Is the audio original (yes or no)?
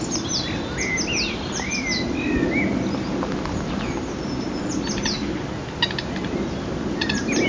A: yes